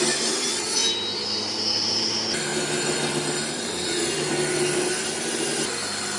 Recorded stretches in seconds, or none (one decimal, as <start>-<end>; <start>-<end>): 0.0-6.2